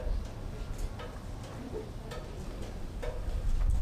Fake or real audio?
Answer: real